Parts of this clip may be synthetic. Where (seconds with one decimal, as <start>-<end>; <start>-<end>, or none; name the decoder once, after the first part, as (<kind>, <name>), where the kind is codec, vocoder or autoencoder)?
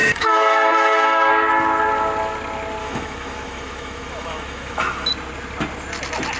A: 0.0-1.3 (autoencoder, DAC-VAE); 2.8-5.1